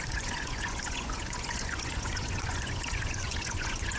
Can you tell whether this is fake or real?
fake